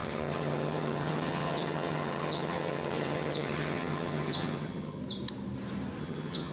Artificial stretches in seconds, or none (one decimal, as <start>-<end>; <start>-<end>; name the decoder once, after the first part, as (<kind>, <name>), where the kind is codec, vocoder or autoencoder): 0.0-5.0 (vocoder, HiFi-GAN); 6.0-6.5